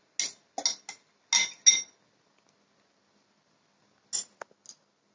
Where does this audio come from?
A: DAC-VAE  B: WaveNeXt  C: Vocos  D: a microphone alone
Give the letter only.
D